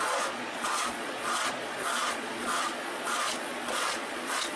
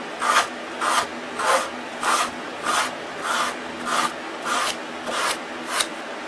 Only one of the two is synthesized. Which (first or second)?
first